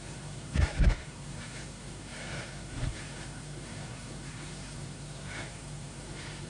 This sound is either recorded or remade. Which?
remade